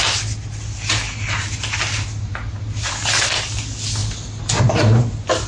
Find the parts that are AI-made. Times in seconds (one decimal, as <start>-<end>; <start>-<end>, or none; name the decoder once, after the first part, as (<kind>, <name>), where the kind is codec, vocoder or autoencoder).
none